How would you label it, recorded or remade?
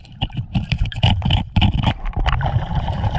remade